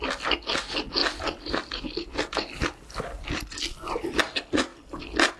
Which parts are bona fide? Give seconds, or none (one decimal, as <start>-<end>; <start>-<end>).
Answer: 0.0-5.4